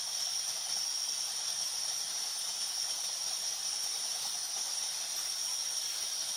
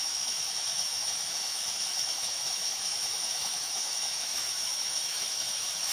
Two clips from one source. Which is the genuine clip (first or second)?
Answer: first